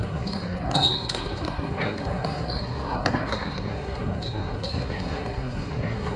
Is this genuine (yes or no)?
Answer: no